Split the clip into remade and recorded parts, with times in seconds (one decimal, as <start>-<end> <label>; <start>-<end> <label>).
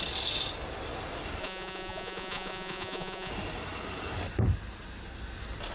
0.0-1.4 recorded; 1.4-3.3 remade; 3.3-5.7 recorded